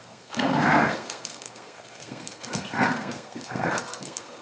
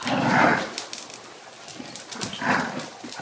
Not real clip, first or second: first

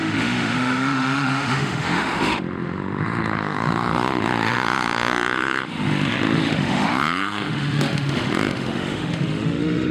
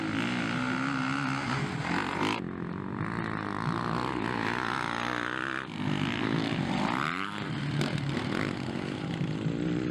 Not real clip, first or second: first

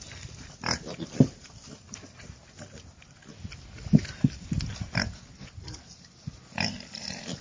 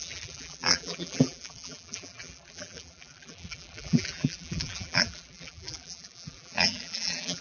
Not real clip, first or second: second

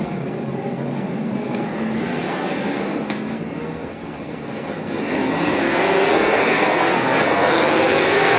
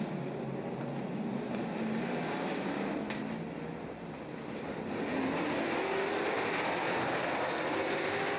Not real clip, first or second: first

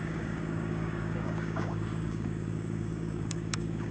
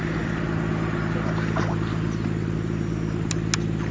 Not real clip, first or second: first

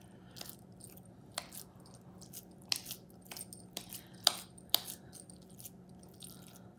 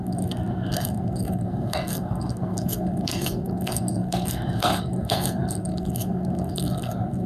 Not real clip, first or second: second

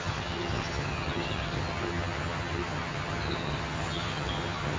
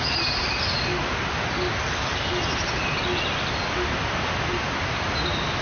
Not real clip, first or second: first